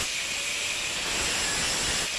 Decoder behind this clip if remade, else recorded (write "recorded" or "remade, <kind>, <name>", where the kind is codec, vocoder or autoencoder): recorded